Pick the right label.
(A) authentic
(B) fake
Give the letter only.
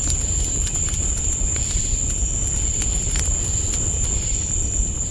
A